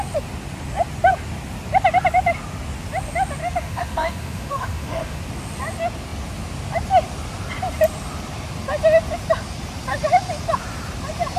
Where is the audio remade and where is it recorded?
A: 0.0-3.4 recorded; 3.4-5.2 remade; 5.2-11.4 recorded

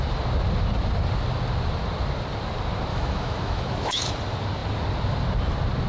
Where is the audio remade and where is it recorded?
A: 0.0-2.9 recorded; 2.9-4.1 remade; 4.1-5.9 recorded

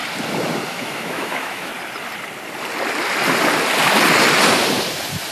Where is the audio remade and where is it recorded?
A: 0.0-0.7 recorded; 0.7-1.7 remade; 1.7-5.3 recorded

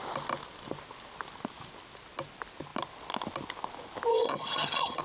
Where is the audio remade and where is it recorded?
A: 0.0-4.1 recorded; 4.1-5.0 remade